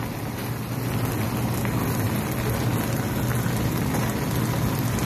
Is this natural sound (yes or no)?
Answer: yes